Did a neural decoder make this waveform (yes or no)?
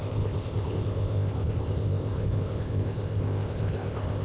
yes